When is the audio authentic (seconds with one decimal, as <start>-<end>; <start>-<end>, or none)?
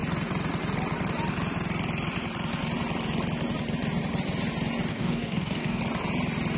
0.0-4.9; 5.8-6.6